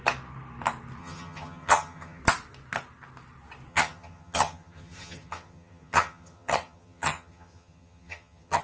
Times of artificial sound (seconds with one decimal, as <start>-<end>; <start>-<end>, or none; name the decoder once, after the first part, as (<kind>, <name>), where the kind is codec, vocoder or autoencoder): 1.0-2.2 (vocoder, HiFi-GAN); 3.7-8.6